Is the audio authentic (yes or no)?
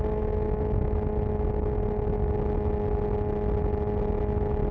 yes